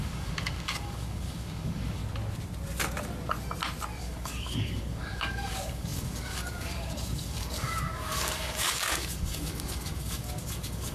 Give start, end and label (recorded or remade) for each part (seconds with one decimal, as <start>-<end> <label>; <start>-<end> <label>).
0.0-2.0 remade; 2.0-4.0 recorded; 4.0-10.9 remade